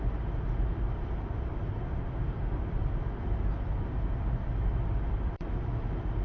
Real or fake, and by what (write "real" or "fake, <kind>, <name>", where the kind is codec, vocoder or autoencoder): real